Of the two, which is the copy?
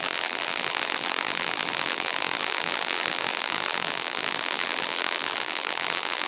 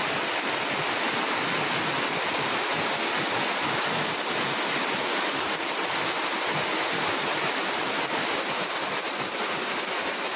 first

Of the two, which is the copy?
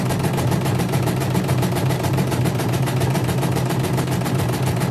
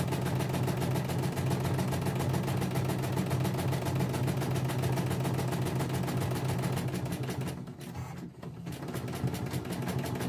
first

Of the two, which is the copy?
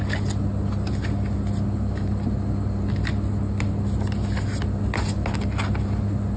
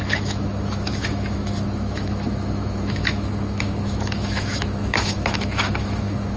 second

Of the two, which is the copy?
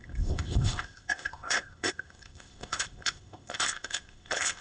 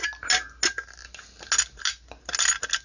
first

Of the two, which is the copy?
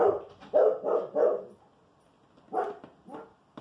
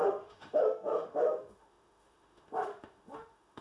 second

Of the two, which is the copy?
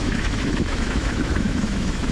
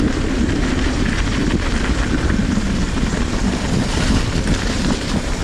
first